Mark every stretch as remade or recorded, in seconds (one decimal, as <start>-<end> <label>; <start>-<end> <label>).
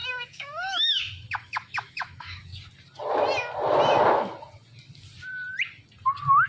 0.0-2.5 remade; 2.5-6.5 recorded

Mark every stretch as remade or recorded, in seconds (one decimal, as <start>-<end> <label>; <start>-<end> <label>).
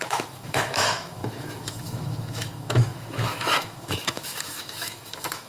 0.0-5.5 remade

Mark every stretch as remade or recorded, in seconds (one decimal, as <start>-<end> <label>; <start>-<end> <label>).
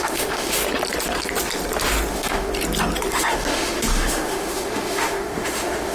0.0-0.6 remade; 0.6-2.1 recorded; 2.1-2.5 remade; 2.5-3.1 recorded; 3.1-5.9 remade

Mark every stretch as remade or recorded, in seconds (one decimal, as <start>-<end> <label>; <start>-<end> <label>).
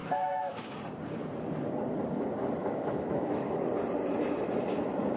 0.0-0.8 remade; 0.8-2.6 recorded; 2.6-3.7 remade; 3.7-5.2 recorded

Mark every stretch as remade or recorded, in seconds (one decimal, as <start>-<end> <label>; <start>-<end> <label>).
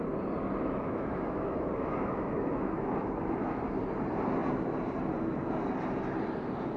0.0-0.6 recorded; 0.6-3.6 remade; 3.6-6.8 recorded